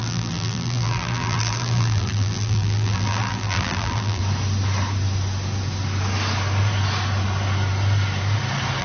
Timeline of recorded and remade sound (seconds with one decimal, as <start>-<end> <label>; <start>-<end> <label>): 0.0-4.2 remade; 4.2-8.8 recorded